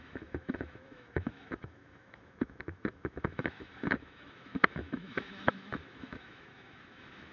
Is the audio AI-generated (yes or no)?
yes